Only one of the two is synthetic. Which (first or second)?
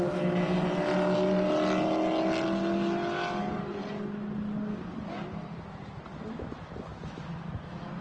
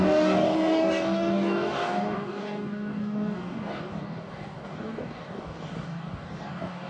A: second